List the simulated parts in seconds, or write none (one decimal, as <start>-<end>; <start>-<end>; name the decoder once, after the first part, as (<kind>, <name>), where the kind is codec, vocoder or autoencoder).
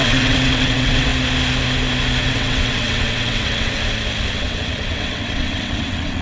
0.0-1.1 (vocoder, WaveNeXt); 2.2-3.8; 4.3-6.2